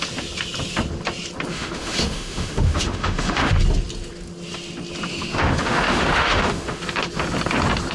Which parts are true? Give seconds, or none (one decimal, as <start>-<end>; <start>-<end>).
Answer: 0.0-1.5; 3.6-5.1; 6.8-7.9